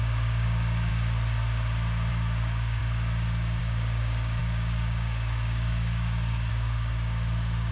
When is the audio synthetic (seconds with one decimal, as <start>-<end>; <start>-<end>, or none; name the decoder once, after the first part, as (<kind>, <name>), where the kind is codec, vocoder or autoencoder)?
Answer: 0.0-0.9 (codec, DAC); 2.1-2.8; 3.6-7.7